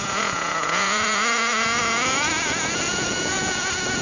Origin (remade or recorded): remade